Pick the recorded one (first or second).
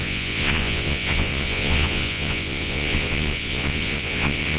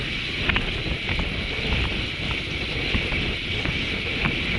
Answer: second